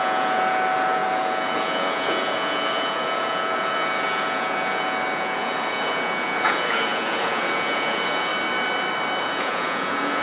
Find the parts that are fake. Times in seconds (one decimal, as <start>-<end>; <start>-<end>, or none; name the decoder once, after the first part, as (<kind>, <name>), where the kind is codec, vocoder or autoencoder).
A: 0.0-8.3 (vocoder, Vocos); 9.2-10.2